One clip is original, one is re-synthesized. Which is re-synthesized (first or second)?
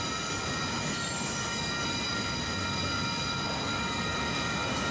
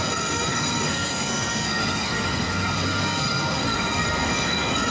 second